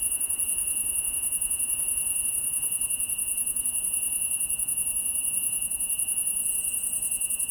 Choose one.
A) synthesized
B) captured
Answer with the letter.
A